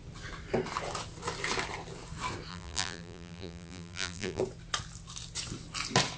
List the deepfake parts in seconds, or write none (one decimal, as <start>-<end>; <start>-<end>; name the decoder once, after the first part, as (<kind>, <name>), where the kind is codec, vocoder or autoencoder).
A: 2.5-4.4 (vocoder, BigVGAN v2)